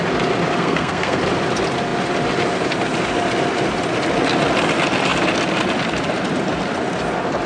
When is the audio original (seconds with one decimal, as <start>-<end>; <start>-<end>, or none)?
0.0-0.6; 1.2-7.5